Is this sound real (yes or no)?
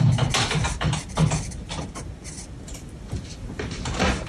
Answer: yes